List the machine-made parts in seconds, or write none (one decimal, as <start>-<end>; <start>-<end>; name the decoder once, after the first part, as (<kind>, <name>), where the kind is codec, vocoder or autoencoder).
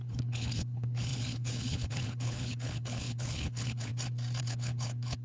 0.0-3.9 (codec, HILCodec); 4.4-5.2